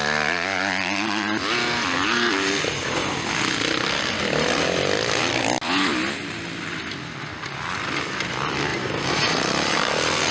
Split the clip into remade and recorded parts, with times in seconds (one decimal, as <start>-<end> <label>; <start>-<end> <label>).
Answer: 0.0-8.7 recorded; 8.7-9.7 remade; 9.7-10.3 recorded